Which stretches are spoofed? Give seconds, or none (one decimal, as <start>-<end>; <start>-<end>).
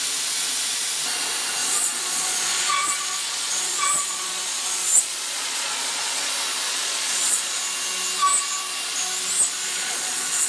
1.6-6.3; 6.7-7.6; 9.7-10.5